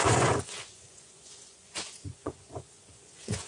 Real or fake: fake